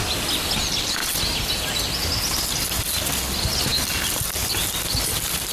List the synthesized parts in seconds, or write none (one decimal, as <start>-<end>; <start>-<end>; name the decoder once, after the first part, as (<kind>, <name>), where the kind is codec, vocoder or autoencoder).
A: none